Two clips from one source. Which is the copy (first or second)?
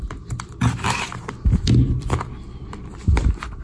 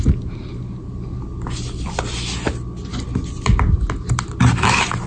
first